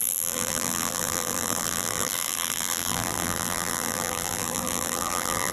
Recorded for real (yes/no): no